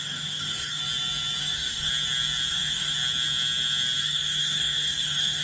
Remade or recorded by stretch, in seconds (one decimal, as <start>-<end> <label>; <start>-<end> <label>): 0.0-0.8 remade; 0.8-1.4 recorded; 1.4-1.9 remade; 1.9-2.5 recorded; 2.5-2.9 remade; 2.9-4.0 recorded; 4.0-5.4 remade